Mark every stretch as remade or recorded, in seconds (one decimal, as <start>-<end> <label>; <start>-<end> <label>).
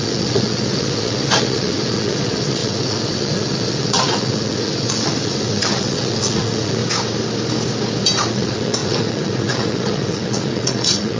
0.0-6.8 remade; 6.8-8.3 recorded; 8.3-11.2 remade